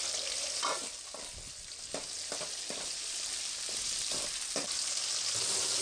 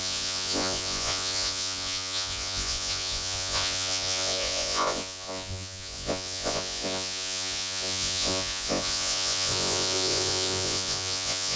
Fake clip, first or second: second